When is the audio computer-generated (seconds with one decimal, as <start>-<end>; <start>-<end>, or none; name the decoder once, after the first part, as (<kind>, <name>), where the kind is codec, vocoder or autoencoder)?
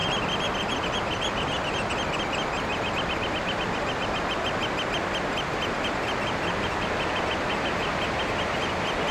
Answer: none